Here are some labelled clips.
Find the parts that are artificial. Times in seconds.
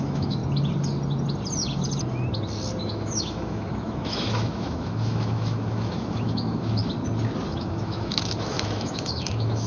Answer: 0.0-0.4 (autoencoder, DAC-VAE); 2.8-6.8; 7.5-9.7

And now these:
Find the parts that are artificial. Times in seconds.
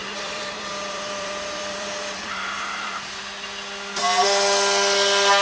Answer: 0.0-3.2 (vocoder, BigVGAN v2)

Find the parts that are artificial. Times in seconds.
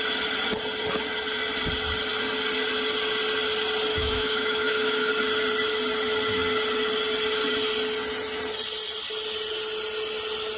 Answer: 3.9-5.1 (autoencoder, DAC-VAE)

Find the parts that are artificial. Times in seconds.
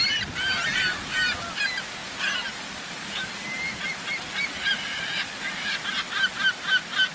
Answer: none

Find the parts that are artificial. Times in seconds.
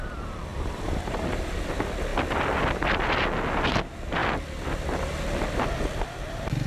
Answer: 0.5-1.1 (vocoder, BigVGAN v2)